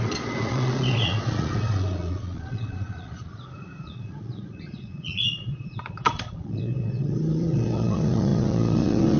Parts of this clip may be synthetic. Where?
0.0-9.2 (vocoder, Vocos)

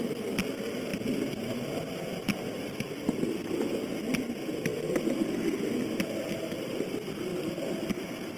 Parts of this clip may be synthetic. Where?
none

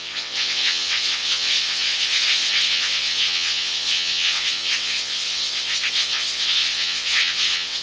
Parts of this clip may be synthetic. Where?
0.0-7.8 (vocoder, WaveNeXt)

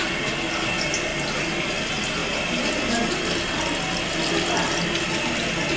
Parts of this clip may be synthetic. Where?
none

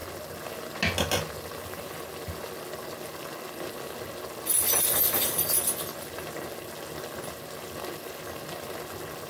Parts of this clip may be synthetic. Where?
none

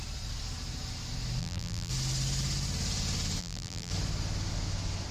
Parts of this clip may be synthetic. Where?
1.4-1.9 (vocoder, BigVGAN v2); 3.4-3.9

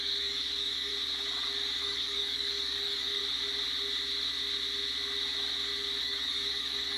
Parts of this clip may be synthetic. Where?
0.0-0.9 (codec, DAC); 1.8-3.2; 6.0-7.0

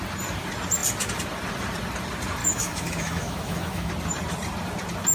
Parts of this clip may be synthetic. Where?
2.4-3.9 (autoencoder, DAC-VAE)